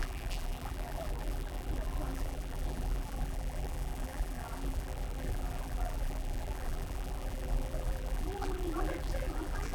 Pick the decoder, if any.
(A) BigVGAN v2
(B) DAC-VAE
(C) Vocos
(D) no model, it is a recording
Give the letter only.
A